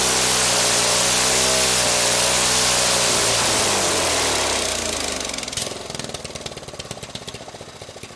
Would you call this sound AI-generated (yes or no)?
no